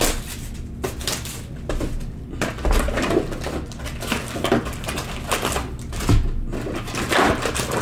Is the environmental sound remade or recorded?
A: recorded